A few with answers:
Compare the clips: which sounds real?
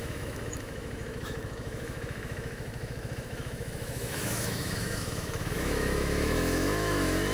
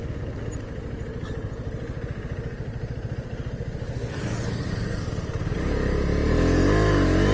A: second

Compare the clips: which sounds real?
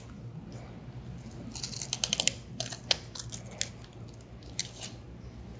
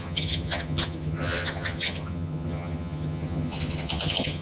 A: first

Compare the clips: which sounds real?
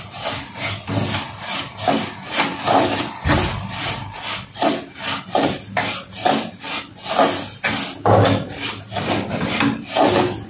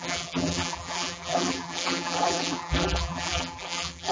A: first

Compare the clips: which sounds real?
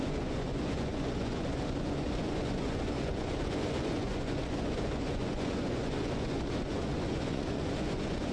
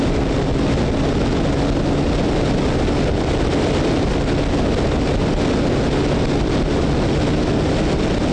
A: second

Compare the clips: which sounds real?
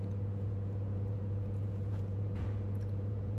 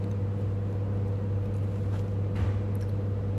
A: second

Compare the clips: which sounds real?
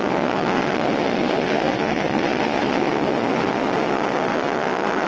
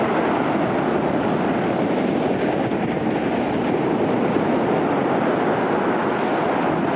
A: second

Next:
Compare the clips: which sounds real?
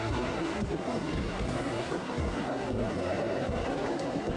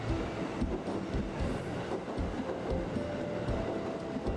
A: second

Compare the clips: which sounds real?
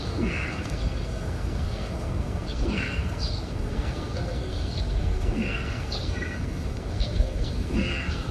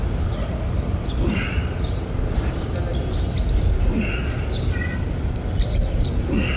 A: second